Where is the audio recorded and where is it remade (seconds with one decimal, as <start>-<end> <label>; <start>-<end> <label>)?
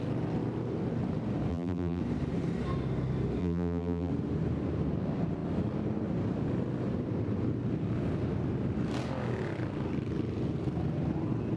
0.0-1.5 recorded; 1.5-2.0 remade; 2.0-3.4 recorded; 3.4-4.1 remade; 4.1-11.6 recorded